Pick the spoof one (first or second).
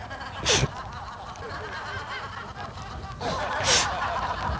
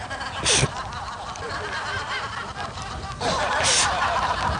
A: second